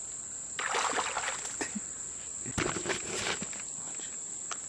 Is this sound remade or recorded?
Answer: recorded